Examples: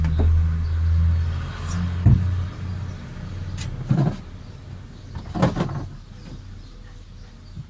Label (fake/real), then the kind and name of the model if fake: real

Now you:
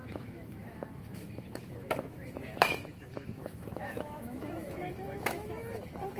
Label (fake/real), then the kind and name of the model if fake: fake, autoencoder, DAC-VAE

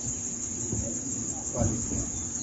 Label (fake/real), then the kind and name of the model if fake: real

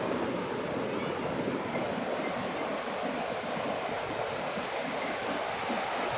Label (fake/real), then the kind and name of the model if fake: real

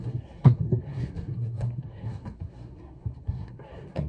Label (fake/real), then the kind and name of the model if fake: fake, codec, SNAC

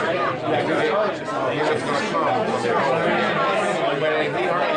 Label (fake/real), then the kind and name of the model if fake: real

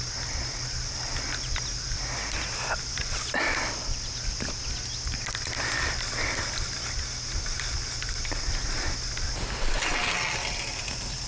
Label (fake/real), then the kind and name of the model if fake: real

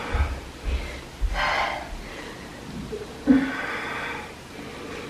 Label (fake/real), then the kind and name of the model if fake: real